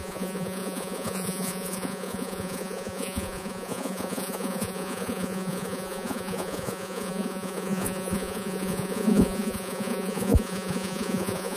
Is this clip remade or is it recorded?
remade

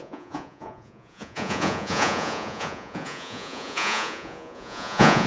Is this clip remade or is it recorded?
remade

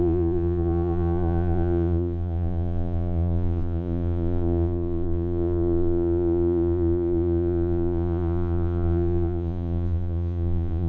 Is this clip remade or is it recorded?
remade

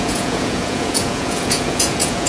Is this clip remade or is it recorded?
remade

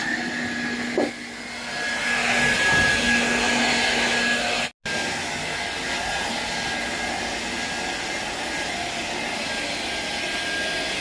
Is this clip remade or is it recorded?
recorded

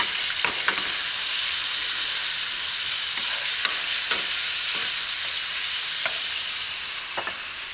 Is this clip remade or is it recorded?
recorded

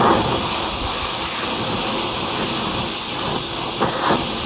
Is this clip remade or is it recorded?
recorded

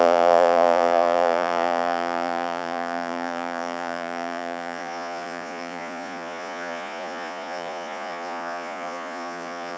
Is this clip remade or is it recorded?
remade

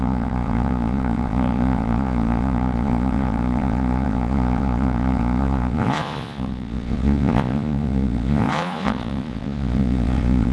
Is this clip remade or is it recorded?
remade